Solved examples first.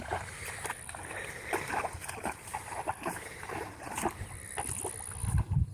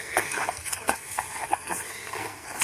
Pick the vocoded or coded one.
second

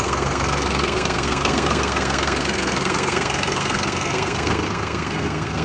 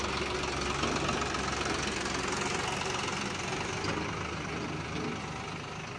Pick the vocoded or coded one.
first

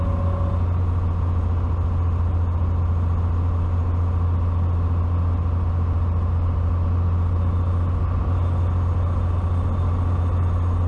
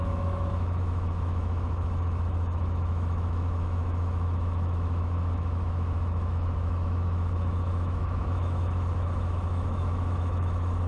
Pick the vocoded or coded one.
second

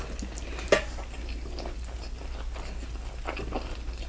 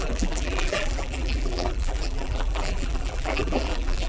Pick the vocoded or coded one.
second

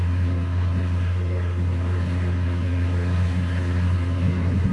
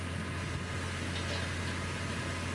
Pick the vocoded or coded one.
first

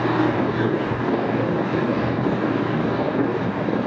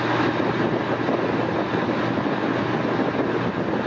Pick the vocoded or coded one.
first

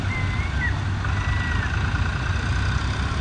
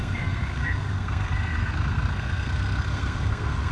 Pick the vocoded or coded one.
second